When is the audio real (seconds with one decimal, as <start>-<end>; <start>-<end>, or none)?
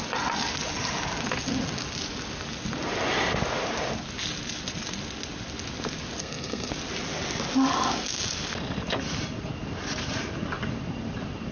0.0-6.2; 6.7-11.5